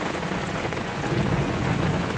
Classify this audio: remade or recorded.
remade